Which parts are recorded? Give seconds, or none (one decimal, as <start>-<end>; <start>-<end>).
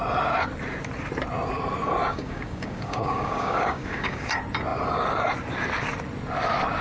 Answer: 0.0-2.1; 4.3-6.8